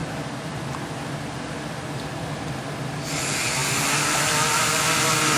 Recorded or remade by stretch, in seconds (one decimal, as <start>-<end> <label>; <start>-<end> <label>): 0.0-5.4 recorded

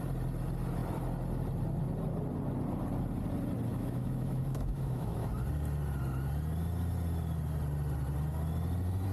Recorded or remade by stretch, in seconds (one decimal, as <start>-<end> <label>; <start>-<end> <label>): 0.0-3.7 recorded; 3.7-5.3 remade; 5.3-9.1 recorded

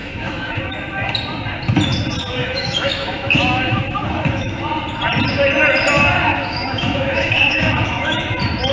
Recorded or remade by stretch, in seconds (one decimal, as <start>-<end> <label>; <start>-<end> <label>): 0.0-0.6 remade; 0.6-2.4 recorded; 2.4-4.6 remade; 4.6-6.3 recorded; 6.3-8.2 remade; 8.2-8.7 recorded